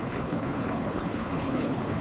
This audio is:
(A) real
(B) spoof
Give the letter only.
B